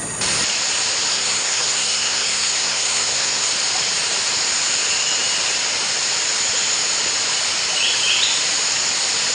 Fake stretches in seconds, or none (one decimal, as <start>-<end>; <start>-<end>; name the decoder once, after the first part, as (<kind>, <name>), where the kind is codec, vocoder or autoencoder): 1.1-3.5 (codec, SNAC)